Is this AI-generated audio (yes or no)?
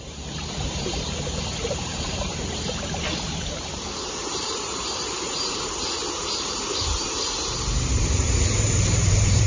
yes